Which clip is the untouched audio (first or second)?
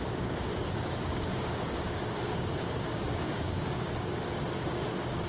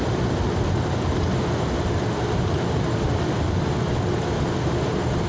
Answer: second